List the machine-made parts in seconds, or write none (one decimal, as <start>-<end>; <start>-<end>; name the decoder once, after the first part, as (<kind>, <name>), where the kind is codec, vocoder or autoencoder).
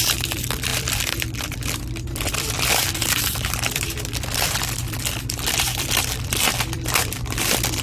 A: 0.0-7.8 (vocoder, BigVGAN v2)